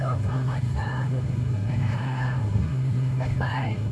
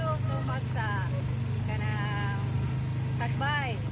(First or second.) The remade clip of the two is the first